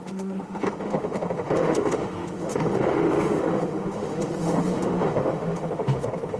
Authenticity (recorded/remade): remade